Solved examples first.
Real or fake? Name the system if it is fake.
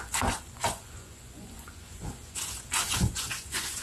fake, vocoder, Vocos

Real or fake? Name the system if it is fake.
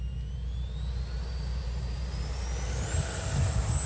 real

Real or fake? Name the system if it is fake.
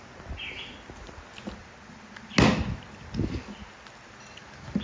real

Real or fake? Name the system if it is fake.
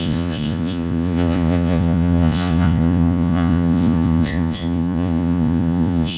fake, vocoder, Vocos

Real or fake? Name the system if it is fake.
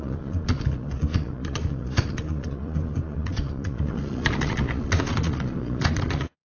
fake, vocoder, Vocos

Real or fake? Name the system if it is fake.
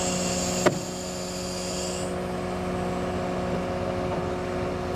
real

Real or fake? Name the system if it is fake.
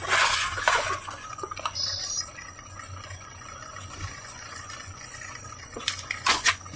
fake, vocoder, Vocos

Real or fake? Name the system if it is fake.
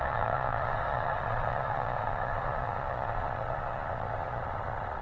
fake, vocoder, Vocos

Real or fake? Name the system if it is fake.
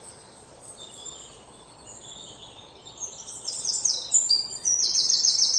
fake, vocoder, Vocos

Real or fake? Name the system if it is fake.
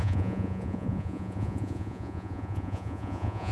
fake, vocoder, Vocos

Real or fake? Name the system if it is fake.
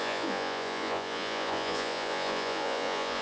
fake, vocoder, Vocos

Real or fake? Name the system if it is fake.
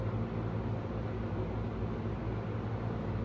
real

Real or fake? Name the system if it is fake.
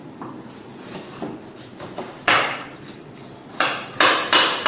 real